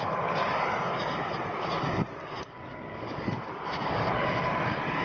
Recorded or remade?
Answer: recorded